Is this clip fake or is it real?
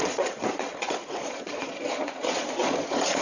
fake